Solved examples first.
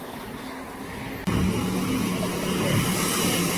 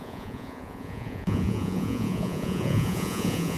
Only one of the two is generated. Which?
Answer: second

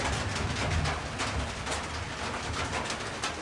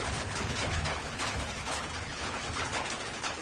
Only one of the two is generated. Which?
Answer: second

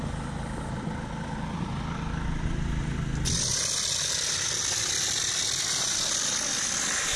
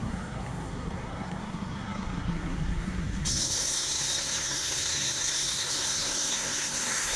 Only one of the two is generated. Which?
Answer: second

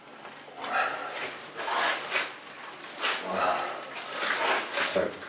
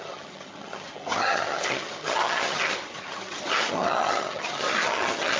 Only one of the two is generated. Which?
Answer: second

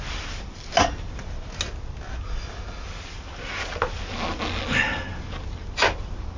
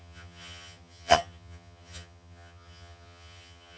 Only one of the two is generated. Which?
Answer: second